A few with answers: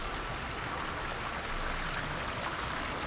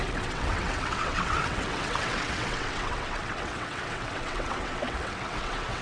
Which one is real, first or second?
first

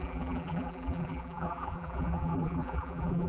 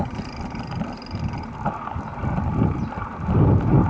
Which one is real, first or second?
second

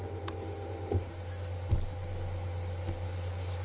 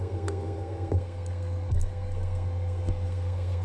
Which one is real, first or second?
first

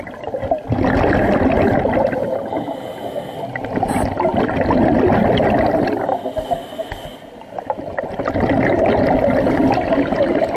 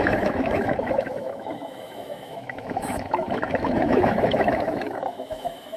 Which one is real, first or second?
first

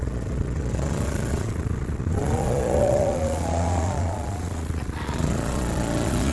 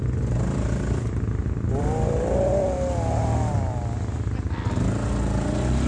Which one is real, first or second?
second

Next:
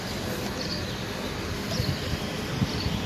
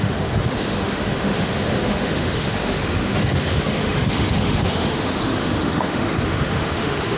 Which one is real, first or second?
first